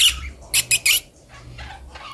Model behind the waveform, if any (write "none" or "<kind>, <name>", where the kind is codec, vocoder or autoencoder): none